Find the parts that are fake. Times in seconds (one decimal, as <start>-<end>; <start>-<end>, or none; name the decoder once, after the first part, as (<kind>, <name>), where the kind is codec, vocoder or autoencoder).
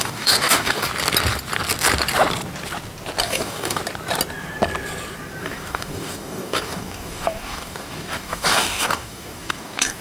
0.0-0.9 (codec, DAC); 3.2-3.8; 5.4-10.0